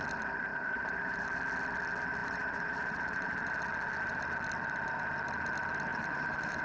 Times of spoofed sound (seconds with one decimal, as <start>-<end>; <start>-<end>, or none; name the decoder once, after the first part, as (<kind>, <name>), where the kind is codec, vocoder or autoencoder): 0.5-1.2 (vocoder, BigVGAN v2); 2.2-3.5; 5.9-6.6